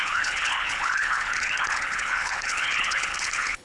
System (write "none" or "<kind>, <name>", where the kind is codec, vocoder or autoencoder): codec, HILCodec